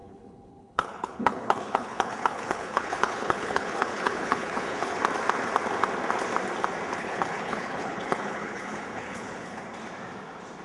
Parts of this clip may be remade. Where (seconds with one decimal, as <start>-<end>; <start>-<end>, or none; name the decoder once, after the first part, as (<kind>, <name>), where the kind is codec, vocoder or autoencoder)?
0.0-5.0 (codec, HILCodec); 7.0-9.6